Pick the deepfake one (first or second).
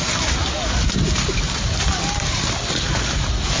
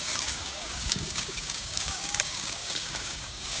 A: second